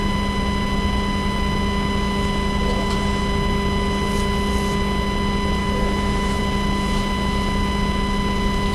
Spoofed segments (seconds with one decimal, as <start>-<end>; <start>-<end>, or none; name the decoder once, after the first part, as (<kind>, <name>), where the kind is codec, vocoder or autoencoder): 5.6-6.4 (autoencoder, DAC-VAE)